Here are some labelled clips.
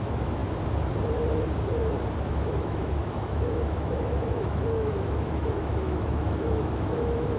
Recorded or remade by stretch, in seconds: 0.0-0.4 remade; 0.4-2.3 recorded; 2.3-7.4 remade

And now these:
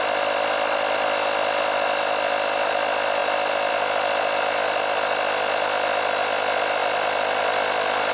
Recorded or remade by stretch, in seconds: 0.0-8.1 recorded

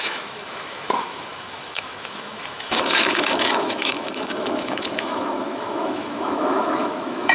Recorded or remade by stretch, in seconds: 0.0-7.3 remade

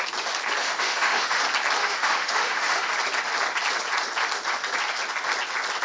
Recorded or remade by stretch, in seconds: 0.0-0.6 recorded; 0.6-1.4 remade; 1.4-1.8 recorded; 1.8-2.9 remade; 2.9-5.8 recorded

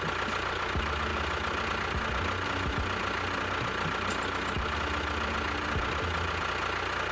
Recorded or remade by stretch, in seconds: 0.0-7.1 recorded

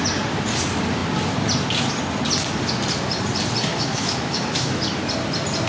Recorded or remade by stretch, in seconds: 0.0-3.7 recorded; 3.7-4.8 remade; 4.8-5.7 recorded

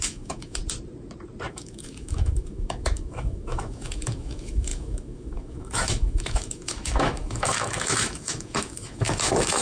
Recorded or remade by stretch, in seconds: 0.0-0.6 remade; 0.6-1.5 recorded; 1.5-9.6 remade

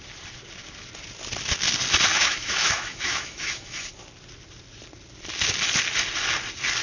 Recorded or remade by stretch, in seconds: 0.0-2.1 recorded; 2.1-3.9 remade; 3.9-6.8 recorded